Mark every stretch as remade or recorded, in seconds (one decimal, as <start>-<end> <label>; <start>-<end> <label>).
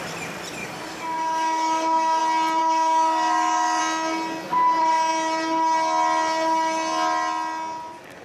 0.0-0.6 recorded; 0.6-2.2 remade; 2.2-2.6 recorded; 2.6-3.8 remade; 3.8-8.2 recorded